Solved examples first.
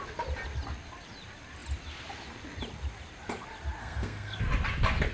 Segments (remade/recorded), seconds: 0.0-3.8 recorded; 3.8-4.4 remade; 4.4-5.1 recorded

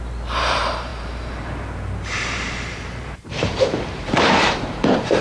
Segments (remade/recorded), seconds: 0.0-5.2 remade

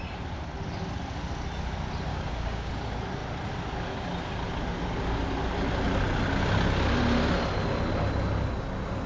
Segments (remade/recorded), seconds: 0.0-2.1 recorded; 2.1-2.7 remade; 2.7-9.1 recorded

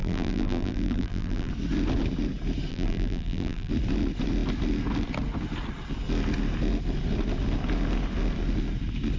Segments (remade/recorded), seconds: 0.0-1.5 remade; 1.5-2.7 recorded; 2.7-3.7 remade; 3.7-9.2 recorded